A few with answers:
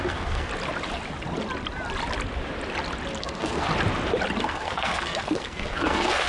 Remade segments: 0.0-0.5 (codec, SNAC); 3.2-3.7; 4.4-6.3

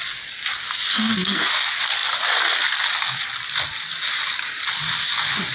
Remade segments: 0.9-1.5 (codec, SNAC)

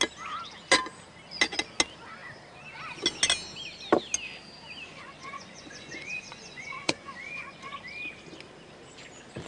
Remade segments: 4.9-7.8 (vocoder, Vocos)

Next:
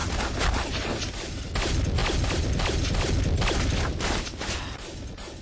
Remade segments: none

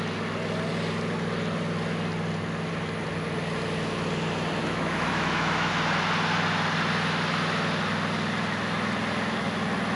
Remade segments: 4.6-5.7 (autoencoder, DAC-VAE)